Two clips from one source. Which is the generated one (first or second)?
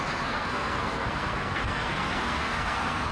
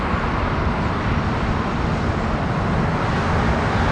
first